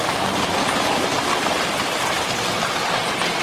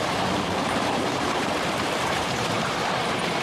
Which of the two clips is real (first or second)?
first